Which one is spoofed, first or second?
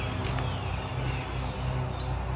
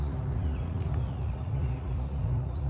second